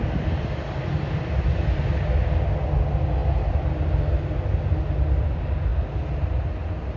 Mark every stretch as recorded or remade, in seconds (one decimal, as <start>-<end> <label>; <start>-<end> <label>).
0.0-7.0 recorded